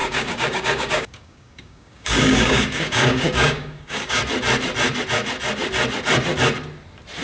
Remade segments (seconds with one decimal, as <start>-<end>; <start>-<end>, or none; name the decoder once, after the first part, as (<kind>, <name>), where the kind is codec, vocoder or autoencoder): 0.0-4.2 (codec, DAC)